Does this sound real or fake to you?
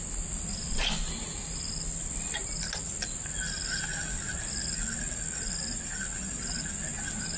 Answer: real